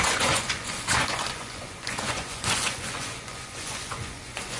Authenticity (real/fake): fake